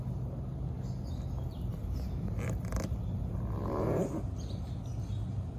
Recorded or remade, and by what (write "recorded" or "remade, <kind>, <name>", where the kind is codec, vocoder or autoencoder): recorded